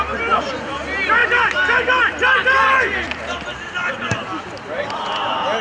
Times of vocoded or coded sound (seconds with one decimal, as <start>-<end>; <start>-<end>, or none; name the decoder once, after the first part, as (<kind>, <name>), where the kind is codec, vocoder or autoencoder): 1.2-3.9 (vocoder, BigVGAN v2)